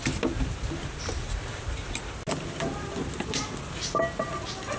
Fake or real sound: real